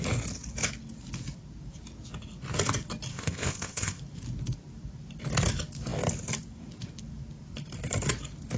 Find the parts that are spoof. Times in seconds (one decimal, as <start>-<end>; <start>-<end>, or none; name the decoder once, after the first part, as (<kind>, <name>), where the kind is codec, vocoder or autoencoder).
3.1-4.0 (codec, ZipCodec)

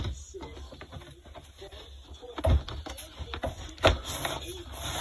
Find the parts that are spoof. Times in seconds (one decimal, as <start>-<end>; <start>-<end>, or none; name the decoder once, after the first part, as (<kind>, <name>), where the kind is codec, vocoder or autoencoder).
none

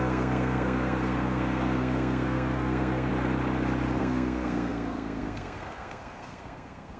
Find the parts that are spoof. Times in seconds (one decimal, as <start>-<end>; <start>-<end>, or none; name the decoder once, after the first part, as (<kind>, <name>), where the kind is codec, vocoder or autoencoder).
0.0-3.1 (codec, SNAC); 4.0-7.0

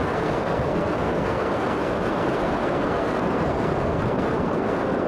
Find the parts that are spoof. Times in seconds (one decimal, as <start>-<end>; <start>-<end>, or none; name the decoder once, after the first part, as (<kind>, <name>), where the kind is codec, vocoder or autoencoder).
0.0-5.1 (codec, SNAC)